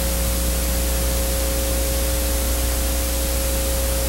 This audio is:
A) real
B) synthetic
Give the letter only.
A